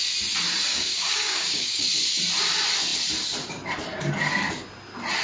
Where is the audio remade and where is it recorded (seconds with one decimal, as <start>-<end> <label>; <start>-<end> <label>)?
0.0-0.7 recorded; 0.7-1.9 remade; 1.9-5.2 recorded